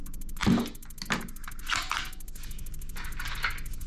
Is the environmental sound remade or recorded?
recorded